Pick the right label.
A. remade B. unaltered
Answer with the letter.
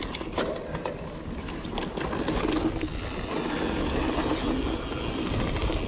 B